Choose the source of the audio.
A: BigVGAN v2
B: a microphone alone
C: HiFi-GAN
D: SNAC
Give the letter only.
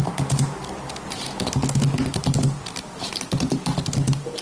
B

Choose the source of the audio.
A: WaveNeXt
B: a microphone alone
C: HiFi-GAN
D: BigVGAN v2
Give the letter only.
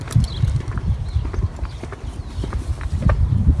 B